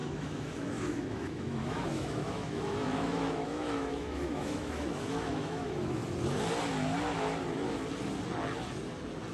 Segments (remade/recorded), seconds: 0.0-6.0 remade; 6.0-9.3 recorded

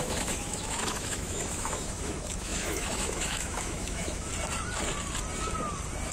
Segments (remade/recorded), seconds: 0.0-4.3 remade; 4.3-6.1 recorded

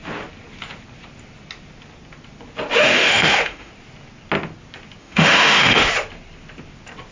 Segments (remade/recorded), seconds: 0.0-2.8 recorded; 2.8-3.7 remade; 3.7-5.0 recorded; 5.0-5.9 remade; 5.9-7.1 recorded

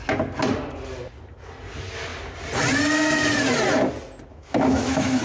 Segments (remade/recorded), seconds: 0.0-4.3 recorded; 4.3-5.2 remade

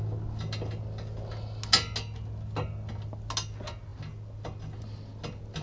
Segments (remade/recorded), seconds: 0.0-5.6 recorded